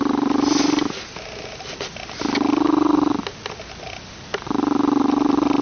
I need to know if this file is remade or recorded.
recorded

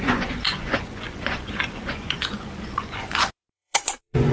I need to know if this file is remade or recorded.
remade